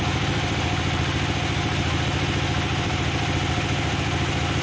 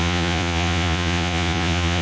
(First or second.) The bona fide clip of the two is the first